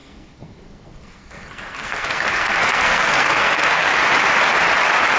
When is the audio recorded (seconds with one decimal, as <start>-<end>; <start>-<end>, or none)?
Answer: 3.9-5.2